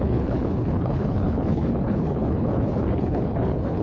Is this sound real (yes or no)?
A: no